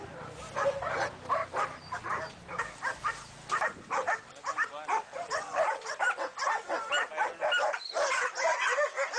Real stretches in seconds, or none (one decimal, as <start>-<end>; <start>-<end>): 0.0-9.2